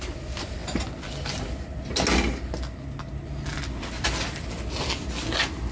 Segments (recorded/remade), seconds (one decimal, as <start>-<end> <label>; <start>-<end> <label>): 0.0-5.7 recorded